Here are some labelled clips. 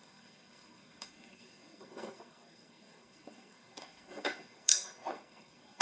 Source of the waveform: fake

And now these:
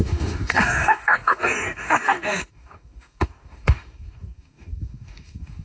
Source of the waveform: fake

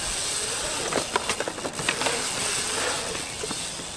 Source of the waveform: real